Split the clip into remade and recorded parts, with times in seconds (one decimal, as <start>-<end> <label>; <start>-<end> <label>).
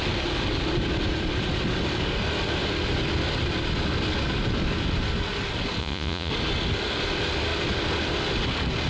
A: 0.0-5.8 recorded; 5.8-6.3 remade; 6.3-8.9 recorded